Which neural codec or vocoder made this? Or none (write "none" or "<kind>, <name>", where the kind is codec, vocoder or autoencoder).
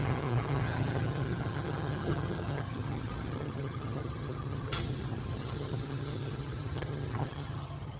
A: vocoder, HiFi-GAN